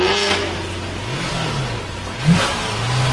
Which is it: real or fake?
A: real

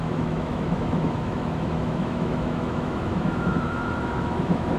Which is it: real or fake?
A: fake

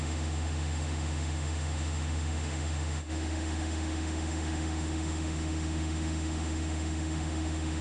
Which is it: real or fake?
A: fake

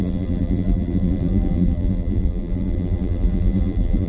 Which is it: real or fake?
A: fake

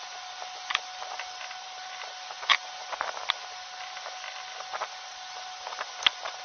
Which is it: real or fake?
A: real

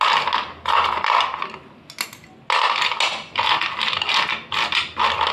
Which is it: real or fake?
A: real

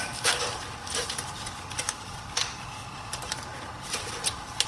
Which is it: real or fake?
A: real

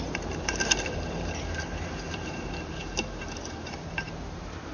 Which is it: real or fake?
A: fake